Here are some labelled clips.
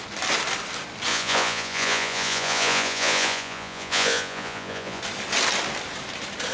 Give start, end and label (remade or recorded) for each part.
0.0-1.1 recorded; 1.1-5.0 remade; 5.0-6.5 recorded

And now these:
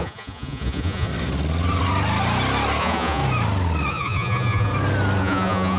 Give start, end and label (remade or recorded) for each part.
0.0-1.1 remade; 1.1-2.8 recorded; 2.8-3.2 remade; 3.2-3.9 recorded; 3.9-4.7 remade; 4.7-5.2 recorded; 5.2-5.8 remade

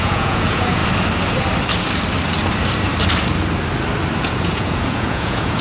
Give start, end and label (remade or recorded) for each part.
0.0-0.8 remade; 0.8-4.2 recorded; 4.2-5.6 remade